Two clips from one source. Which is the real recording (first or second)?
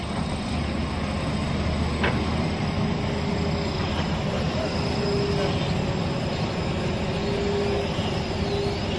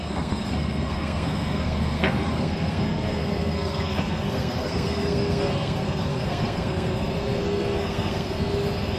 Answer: first